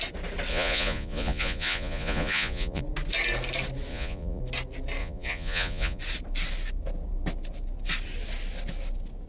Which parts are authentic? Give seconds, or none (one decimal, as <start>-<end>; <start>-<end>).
0.0-0.5; 2.8-3.9; 4.4-5.0; 6.0-9.3